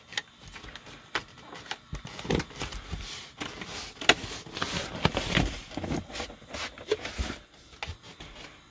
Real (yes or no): yes